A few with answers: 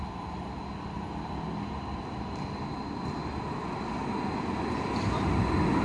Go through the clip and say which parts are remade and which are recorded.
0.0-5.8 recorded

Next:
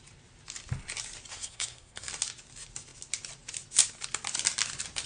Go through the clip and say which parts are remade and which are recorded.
0.0-1.3 recorded; 1.3-2.1 remade; 2.1-5.1 recorded

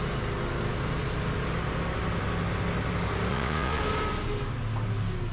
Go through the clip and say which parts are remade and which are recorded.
0.0-3.3 recorded; 3.3-3.8 remade; 3.8-5.3 recorded

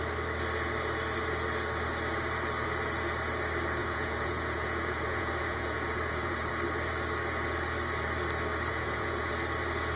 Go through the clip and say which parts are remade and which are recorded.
0.0-3.8 recorded; 3.8-6.5 remade; 6.5-8.7 recorded; 8.7-9.3 remade; 9.3-10.0 recorded

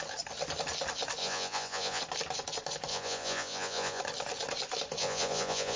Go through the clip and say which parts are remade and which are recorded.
0.0-1.2 recorded; 1.2-2.0 remade; 2.0-2.9 recorded; 2.9-4.0 remade; 4.0-5.0 recorded; 5.0-5.8 remade